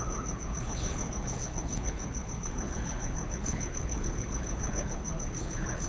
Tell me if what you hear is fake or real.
fake